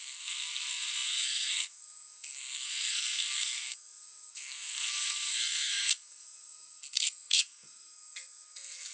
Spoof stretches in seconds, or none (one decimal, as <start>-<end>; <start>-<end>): 0.0-8.9